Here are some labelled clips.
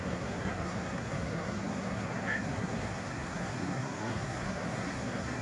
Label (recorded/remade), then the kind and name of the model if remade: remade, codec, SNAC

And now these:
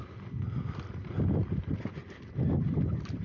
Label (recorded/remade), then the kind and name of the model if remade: recorded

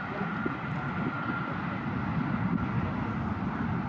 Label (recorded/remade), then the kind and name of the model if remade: recorded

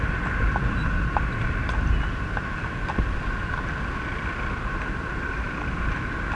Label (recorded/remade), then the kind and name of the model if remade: recorded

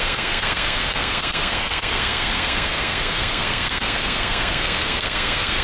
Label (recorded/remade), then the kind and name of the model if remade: remade, codec, SNAC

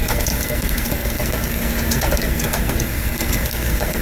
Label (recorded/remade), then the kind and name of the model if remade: remade, codec, SNAC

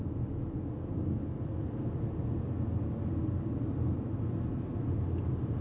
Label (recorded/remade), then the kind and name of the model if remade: recorded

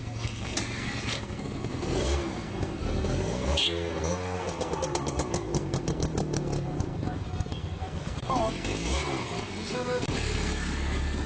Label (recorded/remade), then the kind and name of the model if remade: remade, codec, SNAC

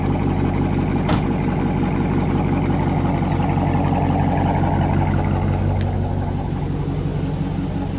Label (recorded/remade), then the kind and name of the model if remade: recorded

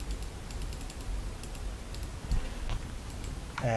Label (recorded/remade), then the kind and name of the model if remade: recorded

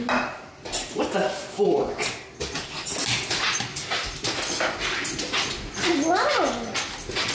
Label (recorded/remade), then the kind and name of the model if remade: recorded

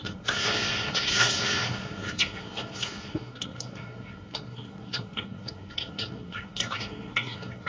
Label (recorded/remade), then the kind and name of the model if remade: remade, codec, SNAC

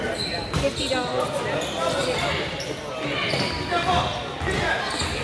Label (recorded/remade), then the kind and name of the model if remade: recorded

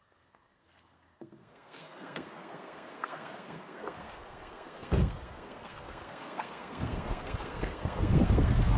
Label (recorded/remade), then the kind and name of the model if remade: remade, codec, SNAC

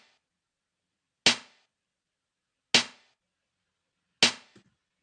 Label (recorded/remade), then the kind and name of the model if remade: recorded